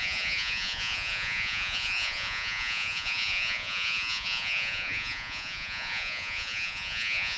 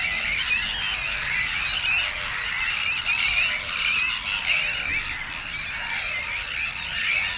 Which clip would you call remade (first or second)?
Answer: first